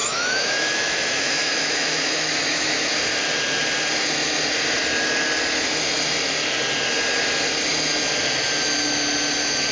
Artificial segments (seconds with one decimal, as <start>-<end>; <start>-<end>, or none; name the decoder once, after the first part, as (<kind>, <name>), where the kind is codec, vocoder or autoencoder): 0.0-2.9 (autoencoder, DAC-VAE)